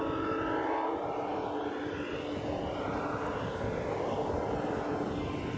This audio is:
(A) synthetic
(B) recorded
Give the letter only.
B